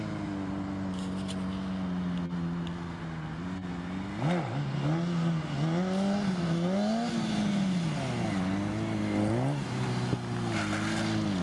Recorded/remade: recorded